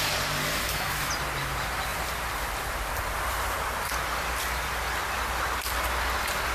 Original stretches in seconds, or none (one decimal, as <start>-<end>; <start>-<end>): 0.0-0.5; 1.1-6.5